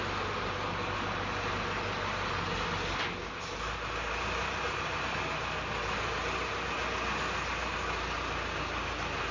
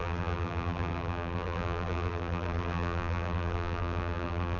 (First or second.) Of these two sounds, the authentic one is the first